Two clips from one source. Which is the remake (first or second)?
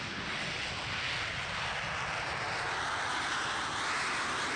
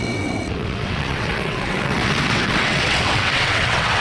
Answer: second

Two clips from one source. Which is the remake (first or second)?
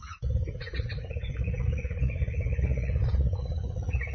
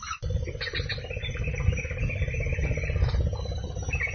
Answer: first